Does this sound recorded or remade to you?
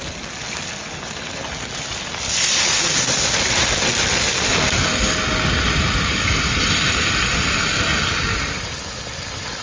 recorded